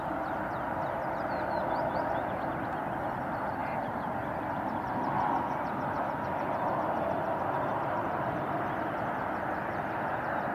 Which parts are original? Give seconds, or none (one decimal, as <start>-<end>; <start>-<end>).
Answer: 0.0-10.5